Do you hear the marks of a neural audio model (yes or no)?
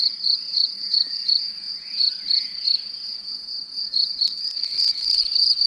yes